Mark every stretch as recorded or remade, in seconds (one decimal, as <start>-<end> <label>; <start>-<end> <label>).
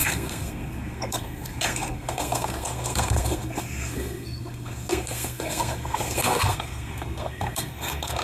0.0-8.2 remade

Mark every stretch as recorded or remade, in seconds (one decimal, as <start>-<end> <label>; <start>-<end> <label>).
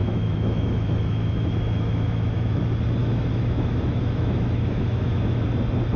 0.0-2.6 remade; 2.6-3.0 recorded; 3.0-5.4 remade; 5.4-6.0 recorded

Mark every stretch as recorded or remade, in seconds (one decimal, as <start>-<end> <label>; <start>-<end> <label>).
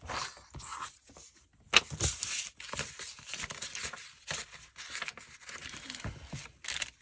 0.0-0.7 recorded; 0.7-1.4 remade; 1.4-7.0 recorded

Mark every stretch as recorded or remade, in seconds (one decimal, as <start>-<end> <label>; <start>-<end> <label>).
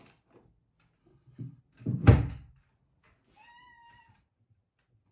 0.0-1.0 recorded; 1.0-1.6 remade; 1.6-5.1 recorded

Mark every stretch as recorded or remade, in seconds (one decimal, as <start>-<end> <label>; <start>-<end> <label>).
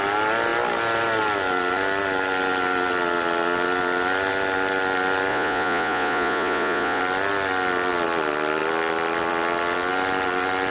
0.0-5.3 recorded; 5.3-7.0 remade; 7.0-10.7 recorded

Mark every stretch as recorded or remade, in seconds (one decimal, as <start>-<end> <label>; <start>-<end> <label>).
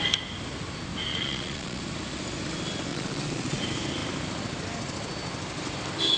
0.0-1.1 recorded; 1.1-1.8 remade; 1.8-2.9 recorded; 2.9-3.6 remade; 3.6-6.2 recorded